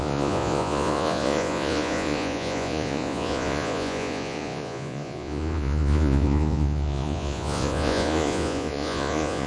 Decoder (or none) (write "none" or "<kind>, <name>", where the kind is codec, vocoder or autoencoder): vocoder, Vocos